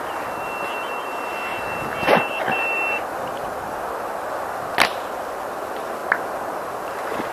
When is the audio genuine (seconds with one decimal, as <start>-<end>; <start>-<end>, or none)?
0.0-7.3